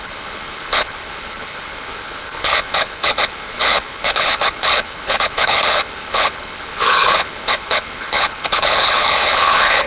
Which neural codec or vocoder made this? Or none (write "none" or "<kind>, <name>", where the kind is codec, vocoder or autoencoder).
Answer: codec, HILCodec